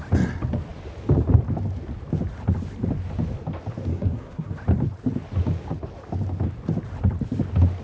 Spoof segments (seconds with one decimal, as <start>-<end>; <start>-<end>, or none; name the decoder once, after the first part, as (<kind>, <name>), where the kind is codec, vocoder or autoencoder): 3.9-4.5 (codec, SNAC)